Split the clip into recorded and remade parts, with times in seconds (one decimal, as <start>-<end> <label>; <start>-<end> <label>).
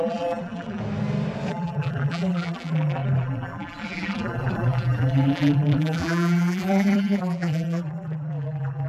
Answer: 0.0-0.8 remade; 0.8-1.5 recorded; 1.5-8.9 remade